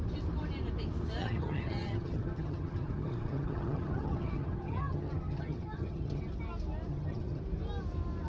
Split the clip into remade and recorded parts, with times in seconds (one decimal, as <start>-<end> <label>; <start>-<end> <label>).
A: 0.0-1.2 recorded; 1.2-6.2 remade; 6.2-6.9 recorded; 6.9-7.4 remade; 7.4-8.3 recorded